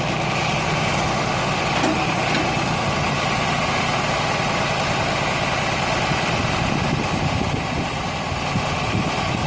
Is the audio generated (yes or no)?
no